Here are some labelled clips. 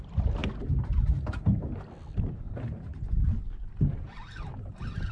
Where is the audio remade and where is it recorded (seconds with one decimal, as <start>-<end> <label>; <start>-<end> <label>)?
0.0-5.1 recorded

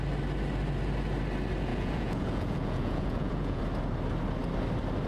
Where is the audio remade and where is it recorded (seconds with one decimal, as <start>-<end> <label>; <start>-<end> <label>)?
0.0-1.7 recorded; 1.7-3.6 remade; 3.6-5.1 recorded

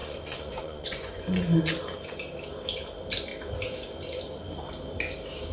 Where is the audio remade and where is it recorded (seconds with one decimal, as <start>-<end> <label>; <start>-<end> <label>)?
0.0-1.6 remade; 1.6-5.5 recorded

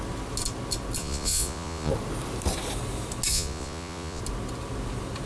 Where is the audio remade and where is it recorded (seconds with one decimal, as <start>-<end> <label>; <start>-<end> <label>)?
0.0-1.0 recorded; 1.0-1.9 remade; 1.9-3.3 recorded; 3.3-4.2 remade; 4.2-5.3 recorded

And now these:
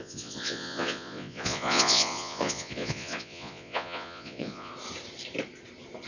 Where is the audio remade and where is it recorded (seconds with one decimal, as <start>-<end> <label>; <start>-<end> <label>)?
0.0-4.7 remade; 4.7-6.1 recorded

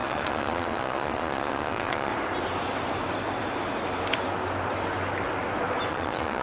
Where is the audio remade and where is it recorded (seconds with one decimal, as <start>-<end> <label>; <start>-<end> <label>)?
0.0-2.1 remade; 2.1-5.9 recorded; 5.9-6.4 remade

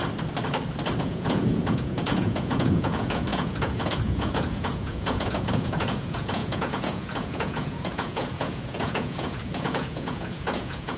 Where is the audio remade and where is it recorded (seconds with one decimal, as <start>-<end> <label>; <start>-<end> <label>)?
0.0-1.0 recorded; 1.0-11.0 remade

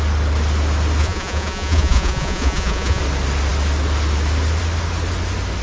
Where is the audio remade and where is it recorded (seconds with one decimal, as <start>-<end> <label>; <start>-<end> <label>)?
0.0-1.0 recorded; 1.0-3.0 remade; 3.0-5.6 recorded